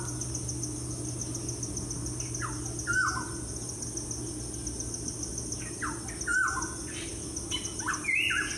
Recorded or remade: recorded